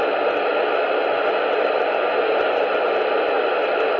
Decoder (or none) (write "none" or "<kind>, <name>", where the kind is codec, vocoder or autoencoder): none